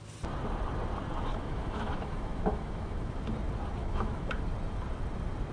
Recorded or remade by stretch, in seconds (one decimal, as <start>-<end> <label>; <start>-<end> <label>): 0.0-1.3 recorded; 1.3-3.2 remade; 3.2-3.8 recorded; 3.8-4.4 remade; 4.4-5.5 recorded